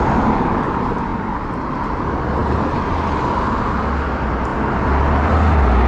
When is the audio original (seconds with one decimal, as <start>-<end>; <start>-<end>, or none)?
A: 0.0-5.9